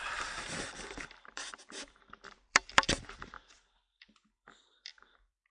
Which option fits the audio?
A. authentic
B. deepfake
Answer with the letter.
B